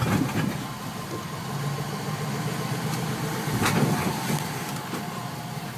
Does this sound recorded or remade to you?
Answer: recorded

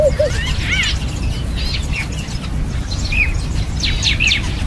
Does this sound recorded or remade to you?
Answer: recorded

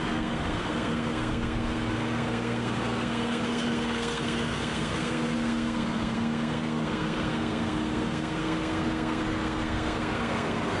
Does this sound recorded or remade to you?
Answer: remade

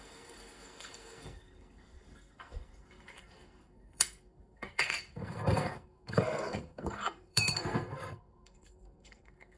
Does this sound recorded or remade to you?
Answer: remade